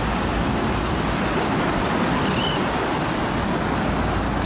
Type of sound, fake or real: real